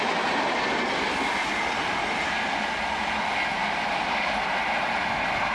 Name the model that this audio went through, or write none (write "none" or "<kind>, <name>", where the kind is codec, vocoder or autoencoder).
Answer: none